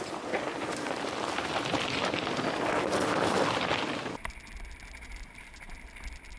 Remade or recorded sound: remade